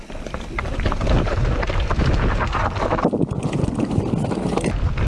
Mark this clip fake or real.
real